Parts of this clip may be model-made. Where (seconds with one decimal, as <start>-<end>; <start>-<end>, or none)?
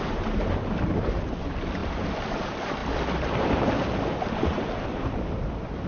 0.0-1.8; 2.4-2.8; 4.3-5.9